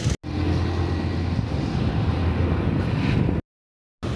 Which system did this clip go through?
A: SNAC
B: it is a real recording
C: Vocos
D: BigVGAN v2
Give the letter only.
B